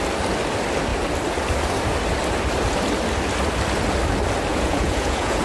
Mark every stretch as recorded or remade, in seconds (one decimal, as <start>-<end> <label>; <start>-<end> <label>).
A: 0.0-4.5 recorded; 4.5-5.4 remade